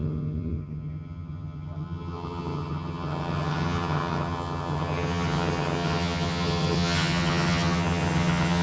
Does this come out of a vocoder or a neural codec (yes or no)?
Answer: yes